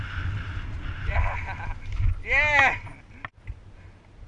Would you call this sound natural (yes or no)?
yes